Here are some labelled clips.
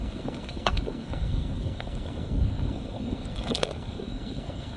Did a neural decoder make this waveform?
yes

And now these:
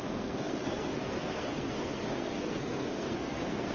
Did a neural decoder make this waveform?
yes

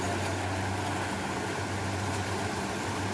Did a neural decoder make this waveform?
no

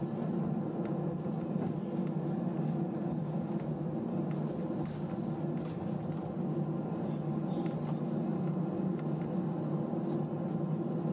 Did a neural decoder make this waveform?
no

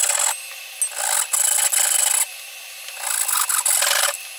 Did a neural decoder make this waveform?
no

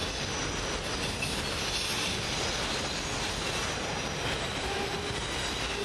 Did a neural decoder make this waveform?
no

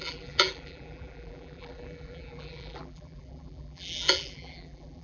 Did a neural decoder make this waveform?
yes